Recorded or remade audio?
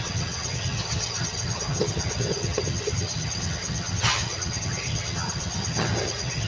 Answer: remade